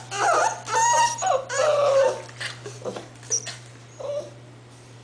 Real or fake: real